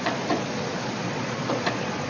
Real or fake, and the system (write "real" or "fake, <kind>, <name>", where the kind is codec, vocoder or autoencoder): fake, vocoder, Vocos